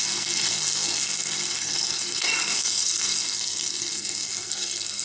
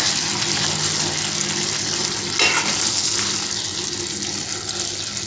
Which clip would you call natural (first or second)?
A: second